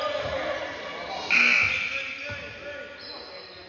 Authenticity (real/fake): real